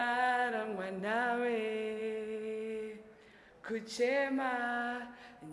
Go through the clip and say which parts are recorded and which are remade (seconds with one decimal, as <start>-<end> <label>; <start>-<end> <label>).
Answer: 0.0-5.5 recorded